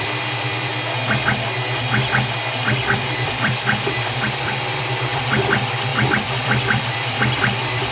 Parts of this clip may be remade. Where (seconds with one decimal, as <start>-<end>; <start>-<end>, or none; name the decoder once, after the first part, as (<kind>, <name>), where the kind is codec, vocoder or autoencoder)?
0.0-0.7 (vocoder, BigVGAN v2); 2.8-7.9